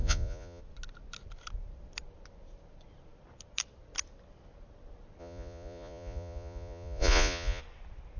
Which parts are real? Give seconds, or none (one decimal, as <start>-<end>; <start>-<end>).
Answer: 0.6-5.2; 7.6-8.2